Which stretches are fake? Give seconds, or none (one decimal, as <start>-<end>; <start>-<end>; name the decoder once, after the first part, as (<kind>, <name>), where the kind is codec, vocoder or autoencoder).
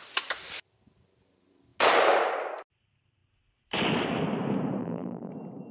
4.8-5.3 (vocoder, BigVGAN v2)